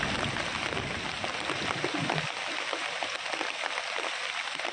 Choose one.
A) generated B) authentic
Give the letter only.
B